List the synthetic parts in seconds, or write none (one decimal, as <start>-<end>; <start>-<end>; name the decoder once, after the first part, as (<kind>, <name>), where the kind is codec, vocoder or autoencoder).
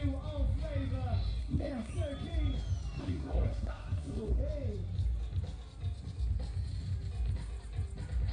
1.4-1.9 (codec, SNAC); 3.0-4.4